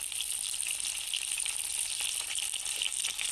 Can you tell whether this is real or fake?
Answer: real